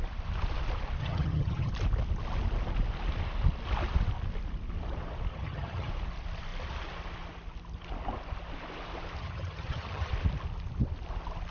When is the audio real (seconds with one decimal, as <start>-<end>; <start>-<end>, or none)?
0.0-1.0; 1.7-5.3; 5.9-9.2; 10.1-11.5